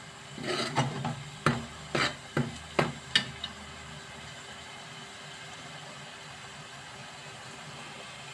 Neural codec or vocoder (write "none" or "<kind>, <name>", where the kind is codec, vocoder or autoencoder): none